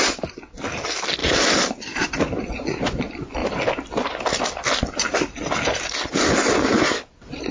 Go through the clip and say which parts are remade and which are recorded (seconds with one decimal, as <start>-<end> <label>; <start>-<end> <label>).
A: 0.0-7.5 remade